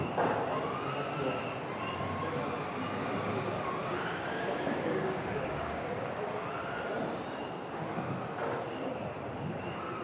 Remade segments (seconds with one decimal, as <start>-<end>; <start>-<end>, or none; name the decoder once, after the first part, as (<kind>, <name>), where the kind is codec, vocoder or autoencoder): 3.8-6.1 (codec, DAC)